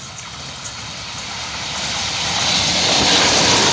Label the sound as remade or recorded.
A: recorded